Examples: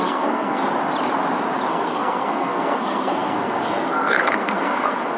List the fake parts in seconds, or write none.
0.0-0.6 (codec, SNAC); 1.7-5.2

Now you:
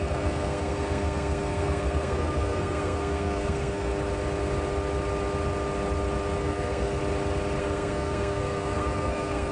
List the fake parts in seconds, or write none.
0.0-3.9 (codec, SNAC); 6.4-7.0; 7.6-9.5

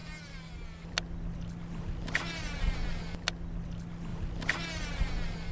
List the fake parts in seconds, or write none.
none